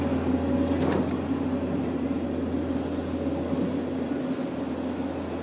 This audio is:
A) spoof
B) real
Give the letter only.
B